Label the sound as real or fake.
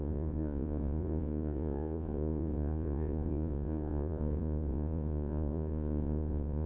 fake